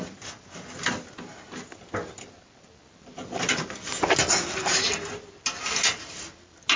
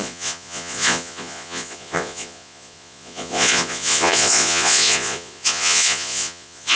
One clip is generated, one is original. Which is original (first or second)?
first